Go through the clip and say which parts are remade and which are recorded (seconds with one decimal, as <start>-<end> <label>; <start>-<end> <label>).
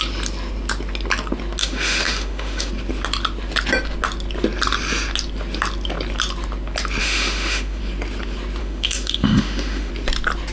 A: 0.0-1.6 recorded; 1.6-2.7 remade; 2.7-7.0 recorded; 7.0-7.8 remade; 7.8-8.6 recorded; 8.6-9.9 remade; 9.9-10.5 recorded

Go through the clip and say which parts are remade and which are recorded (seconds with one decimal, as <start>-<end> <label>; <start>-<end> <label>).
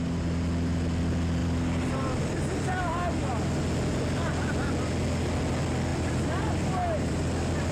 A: 0.0-1.4 recorded; 1.4-3.1 remade; 3.1-5.9 recorded; 5.9-7.1 remade; 7.1-7.7 recorded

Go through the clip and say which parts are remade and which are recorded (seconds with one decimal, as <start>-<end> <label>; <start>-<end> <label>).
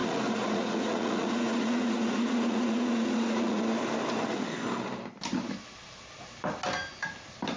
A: 0.0-3.6 remade; 3.6-7.6 recorded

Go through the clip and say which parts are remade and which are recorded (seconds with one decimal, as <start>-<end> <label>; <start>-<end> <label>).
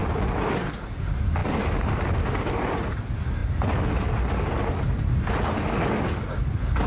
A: 0.0-6.9 recorded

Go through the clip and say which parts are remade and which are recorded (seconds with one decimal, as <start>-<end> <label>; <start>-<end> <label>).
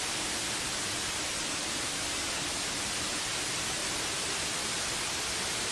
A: 0.0-5.7 recorded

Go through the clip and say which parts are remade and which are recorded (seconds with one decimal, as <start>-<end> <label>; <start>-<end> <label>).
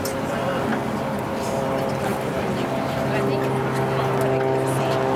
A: 0.0-5.2 recorded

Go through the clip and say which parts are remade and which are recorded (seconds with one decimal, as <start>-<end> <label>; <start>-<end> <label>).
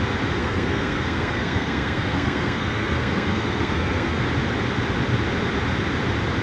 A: 0.0-0.4 recorded; 0.4-4.2 remade; 4.2-6.4 recorded